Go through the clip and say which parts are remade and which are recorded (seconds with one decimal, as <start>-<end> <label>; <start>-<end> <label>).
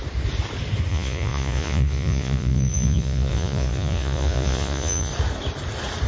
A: 0.0-0.9 recorded; 0.9-5.1 remade; 5.1-6.1 recorded